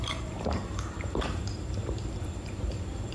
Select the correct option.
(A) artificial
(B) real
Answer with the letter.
A